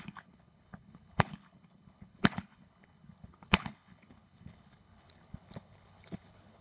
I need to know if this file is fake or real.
fake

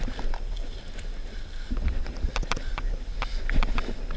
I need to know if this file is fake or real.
real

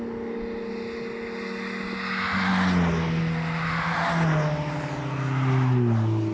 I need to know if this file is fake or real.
real